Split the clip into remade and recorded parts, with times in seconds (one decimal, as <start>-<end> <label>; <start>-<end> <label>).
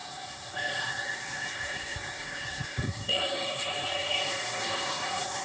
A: 0.0-5.4 remade